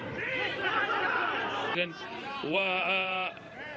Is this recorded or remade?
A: remade